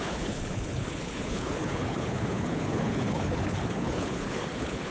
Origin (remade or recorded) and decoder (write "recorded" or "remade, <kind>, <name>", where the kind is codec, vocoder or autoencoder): remade, codec, HILCodec